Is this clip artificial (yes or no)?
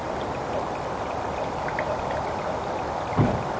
no